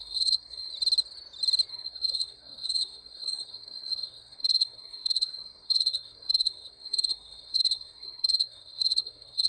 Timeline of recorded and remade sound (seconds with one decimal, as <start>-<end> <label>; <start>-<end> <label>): 0.0-0.7 remade; 0.7-1.7 recorded; 1.7-9.5 remade